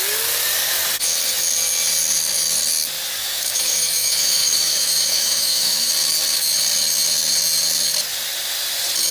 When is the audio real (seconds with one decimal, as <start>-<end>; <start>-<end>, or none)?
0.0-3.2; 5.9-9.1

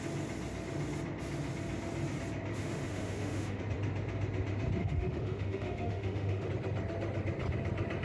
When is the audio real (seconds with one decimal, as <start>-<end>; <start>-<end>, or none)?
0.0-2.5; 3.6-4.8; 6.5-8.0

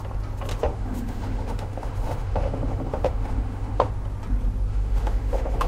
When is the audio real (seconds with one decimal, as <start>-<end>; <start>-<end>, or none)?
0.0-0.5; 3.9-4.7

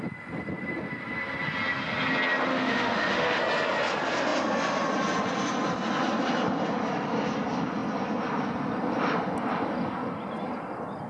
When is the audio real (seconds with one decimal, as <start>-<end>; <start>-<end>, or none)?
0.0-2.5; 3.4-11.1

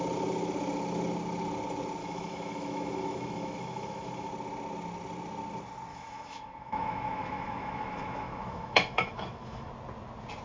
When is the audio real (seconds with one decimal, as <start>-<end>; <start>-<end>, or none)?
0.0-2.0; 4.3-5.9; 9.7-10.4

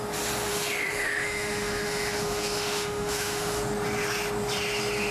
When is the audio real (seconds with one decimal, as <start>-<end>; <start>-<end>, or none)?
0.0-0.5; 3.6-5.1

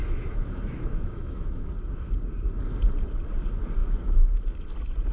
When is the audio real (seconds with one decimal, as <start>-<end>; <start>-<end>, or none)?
1.7-5.1